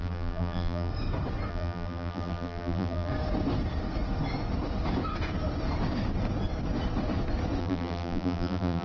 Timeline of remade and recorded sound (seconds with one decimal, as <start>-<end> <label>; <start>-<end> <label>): 0.0-0.9 remade; 0.9-1.5 recorded; 1.5-3.1 remade; 3.1-7.6 recorded; 7.6-8.8 remade